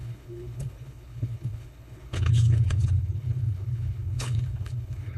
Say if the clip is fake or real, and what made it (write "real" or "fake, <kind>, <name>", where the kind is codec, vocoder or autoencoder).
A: fake, codec, HILCodec